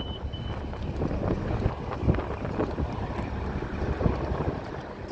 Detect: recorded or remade recorded